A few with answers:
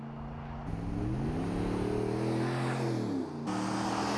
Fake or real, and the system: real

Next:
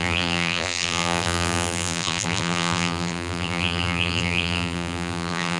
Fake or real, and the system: fake, vocoder, BigVGAN v2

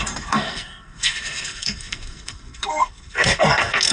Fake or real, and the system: fake, codec, SNAC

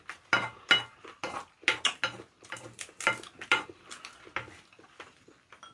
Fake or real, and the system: real